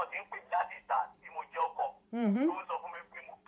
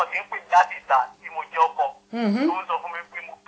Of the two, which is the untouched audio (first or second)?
second